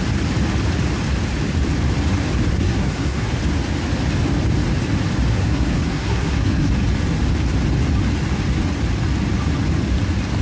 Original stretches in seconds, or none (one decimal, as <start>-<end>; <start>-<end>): 0.0-2.5; 3.4-5.3; 6.7-10.4